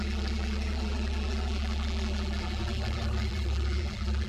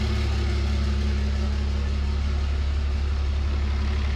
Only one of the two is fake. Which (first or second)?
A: first